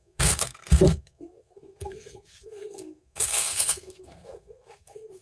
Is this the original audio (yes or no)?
no